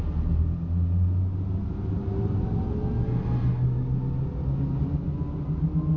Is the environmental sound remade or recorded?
recorded